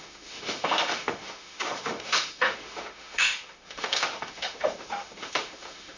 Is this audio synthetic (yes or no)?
yes